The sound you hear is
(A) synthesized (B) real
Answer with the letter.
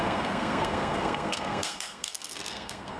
A